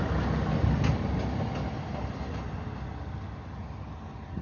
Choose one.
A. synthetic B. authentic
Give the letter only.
B